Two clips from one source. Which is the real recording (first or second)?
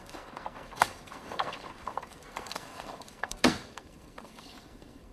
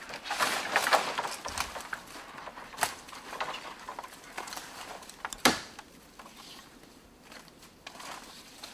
second